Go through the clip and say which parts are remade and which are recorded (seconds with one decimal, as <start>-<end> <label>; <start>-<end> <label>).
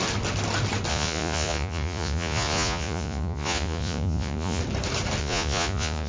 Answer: 0.0-0.9 recorded; 0.9-4.6 remade; 4.6-5.2 recorded; 5.2-6.1 remade